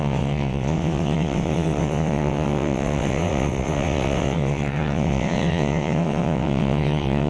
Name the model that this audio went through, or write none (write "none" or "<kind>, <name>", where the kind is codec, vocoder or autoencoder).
vocoder, WaveNeXt